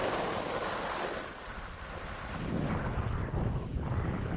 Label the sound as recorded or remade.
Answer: recorded